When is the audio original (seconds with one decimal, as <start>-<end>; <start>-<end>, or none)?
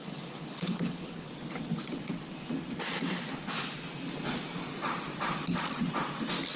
1.3-6.6